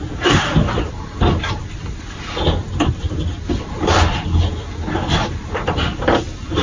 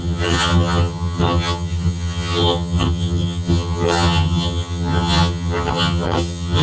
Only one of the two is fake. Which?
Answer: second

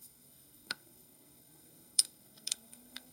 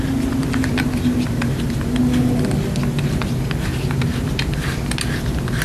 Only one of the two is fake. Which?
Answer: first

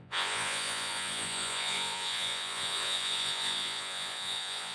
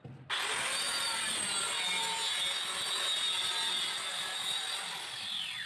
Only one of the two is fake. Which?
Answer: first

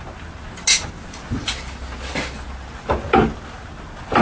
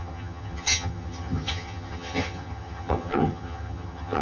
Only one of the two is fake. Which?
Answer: second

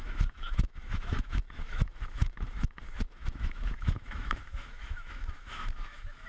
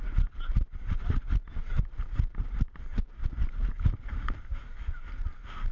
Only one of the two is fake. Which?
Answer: first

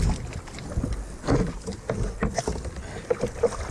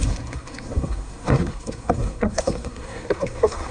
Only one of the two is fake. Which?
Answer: second